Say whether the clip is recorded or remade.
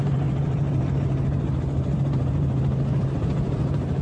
remade